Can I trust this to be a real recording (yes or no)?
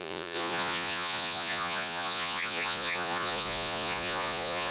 no